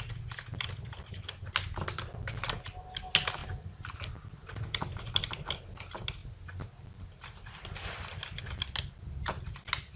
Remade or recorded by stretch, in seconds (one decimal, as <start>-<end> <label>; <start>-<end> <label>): 0.0-3.4 recorded; 3.4-4.8 remade; 4.8-10.0 recorded